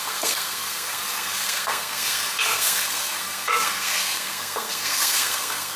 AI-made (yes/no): yes